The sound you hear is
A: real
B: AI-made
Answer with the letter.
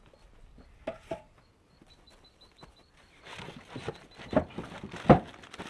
A